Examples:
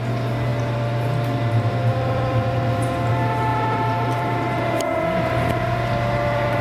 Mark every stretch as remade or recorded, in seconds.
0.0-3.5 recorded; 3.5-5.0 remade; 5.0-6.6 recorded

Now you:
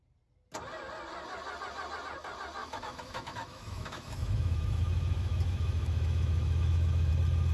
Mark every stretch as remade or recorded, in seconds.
0.0-2.6 recorded; 2.6-7.1 remade; 7.1-7.5 recorded

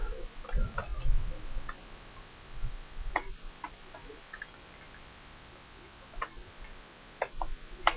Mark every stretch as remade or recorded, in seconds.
0.0-2.6 recorded; 2.6-5.5 remade; 5.5-8.0 recorded

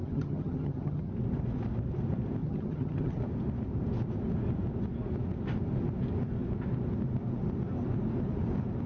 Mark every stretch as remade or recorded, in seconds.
0.0-1.1 remade; 1.1-2.4 recorded; 2.4-3.2 remade; 3.2-8.9 recorded

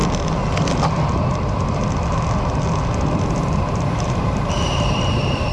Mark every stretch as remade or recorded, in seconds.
0.0-3.3 recorded; 3.3-5.5 remade

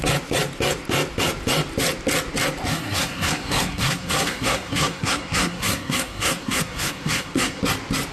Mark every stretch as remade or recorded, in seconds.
0.0-2.7 recorded; 2.7-7.6 remade; 7.6-8.1 recorded

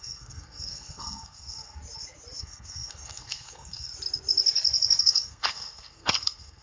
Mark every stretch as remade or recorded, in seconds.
0.0-1.8 remade; 1.8-2.4 recorded; 2.4-3.9 remade; 3.9-5.0 recorded; 5.0-6.6 remade